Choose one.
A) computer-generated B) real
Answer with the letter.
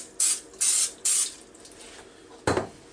B